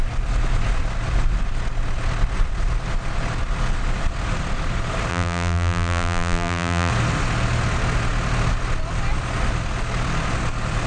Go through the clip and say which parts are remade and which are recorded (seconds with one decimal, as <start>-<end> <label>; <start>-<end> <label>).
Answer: 0.0-5.1 recorded; 5.1-6.9 remade; 6.9-10.9 recorded

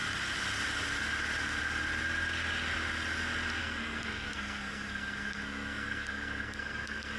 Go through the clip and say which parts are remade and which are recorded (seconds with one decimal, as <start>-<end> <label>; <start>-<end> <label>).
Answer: 0.0-3.6 recorded; 3.6-7.2 remade

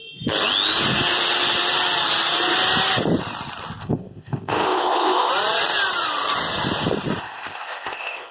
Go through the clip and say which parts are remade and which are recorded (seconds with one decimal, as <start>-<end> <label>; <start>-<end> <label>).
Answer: 0.0-3.8 recorded; 3.8-5.3 remade; 5.3-7.2 recorded; 7.2-8.3 remade

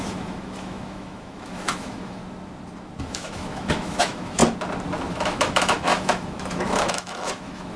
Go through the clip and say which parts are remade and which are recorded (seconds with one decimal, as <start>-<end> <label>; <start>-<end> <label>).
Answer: 0.0-2.2 remade; 2.2-3.0 recorded; 3.0-4.4 remade; 4.4-5.1 recorded; 5.1-7.8 remade

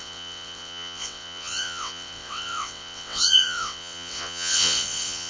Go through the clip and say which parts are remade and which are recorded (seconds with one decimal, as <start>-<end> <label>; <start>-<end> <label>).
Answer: 0.0-5.3 remade

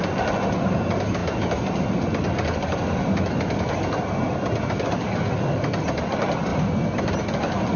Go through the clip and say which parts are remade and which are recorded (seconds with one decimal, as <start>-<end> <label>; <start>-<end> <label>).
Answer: 0.0-7.8 recorded

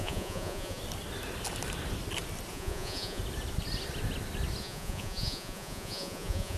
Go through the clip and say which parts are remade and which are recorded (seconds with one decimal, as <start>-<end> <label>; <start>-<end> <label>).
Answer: 0.0-0.8 remade; 0.8-2.5 recorded; 2.5-3.2 remade; 3.2-4.6 recorded; 4.6-6.6 remade

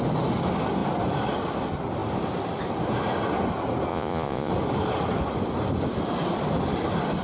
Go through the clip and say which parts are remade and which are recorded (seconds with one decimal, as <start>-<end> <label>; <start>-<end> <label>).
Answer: 0.0-3.9 recorded; 3.9-4.5 remade; 4.5-7.2 recorded